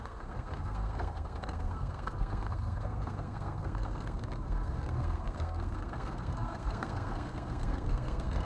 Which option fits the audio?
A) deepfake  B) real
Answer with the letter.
A